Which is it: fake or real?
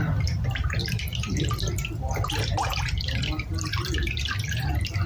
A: fake